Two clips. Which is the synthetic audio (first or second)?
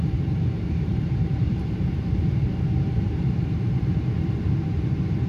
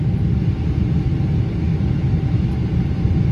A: first